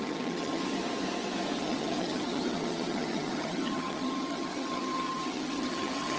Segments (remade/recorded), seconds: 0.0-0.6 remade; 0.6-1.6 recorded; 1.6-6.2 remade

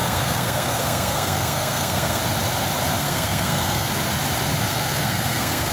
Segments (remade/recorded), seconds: 0.0-2.2 remade; 2.2-3.0 recorded; 3.0-3.9 remade; 3.9-4.6 recorded; 4.6-5.7 remade

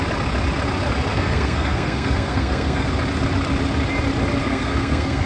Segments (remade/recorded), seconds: 0.0-1.1 recorded; 1.1-2.9 remade; 2.9-4.4 recorded; 4.4-5.3 remade

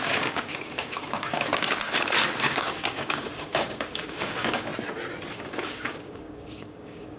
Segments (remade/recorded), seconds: 0.0-1.5 remade; 1.5-2.4 recorded; 2.4-4.7 remade; 4.7-5.3 recorded; 5.3-7.2 remade

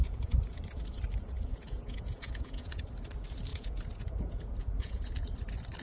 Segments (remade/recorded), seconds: 0.0-0.6 remade; 0.6-1.5 recorded; 1.5-2.8 remade; 2.8-3.5 recorded; 3.5-5.1 remade; 5.1-5.8 recorded

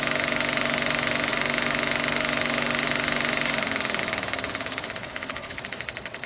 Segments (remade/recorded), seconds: 0.0-5.0 recorded; 5.0-5.6 remade; 5.6-6.3 recorded

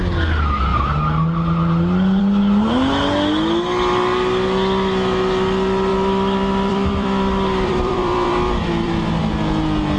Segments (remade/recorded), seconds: 0.0-5.9 recorded; 5.9-9.0 remade; 9.0-10.0 recorded